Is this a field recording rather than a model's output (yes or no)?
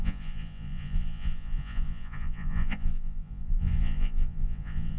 no